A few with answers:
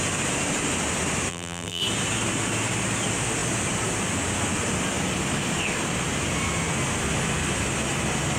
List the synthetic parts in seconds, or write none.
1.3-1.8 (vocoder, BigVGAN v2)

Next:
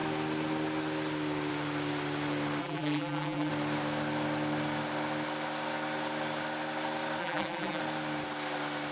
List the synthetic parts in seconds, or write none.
2.6-3.5 (vocoder, BigVGAN v2); 7.2-7.8